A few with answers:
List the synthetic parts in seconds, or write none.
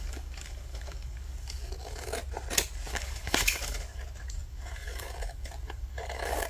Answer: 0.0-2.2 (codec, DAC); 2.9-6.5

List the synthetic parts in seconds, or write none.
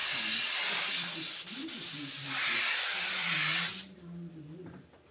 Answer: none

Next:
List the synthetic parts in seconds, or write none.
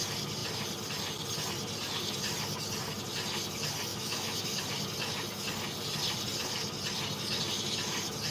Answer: 3.9-4.6 (autoencoder, DAC-VAE)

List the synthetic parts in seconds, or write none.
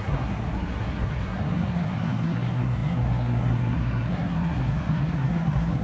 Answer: 0.0-5.8 (codec, SNAC)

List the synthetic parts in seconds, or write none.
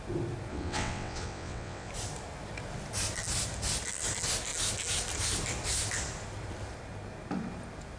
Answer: 0.5-1.9 (vocoder, WaveNeXt)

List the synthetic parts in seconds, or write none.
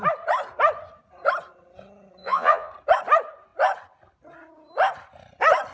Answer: 2.2-2.7 (vocoder, Vocos)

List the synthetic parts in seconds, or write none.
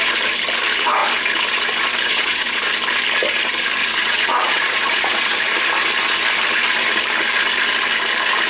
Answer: 2.1-2.6 (vocoder, Vocos); 3.8-5.5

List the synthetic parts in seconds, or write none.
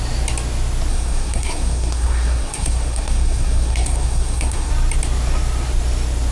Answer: 0.9-4.7 (codec, SNAC)